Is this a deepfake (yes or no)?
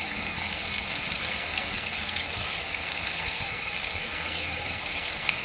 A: yes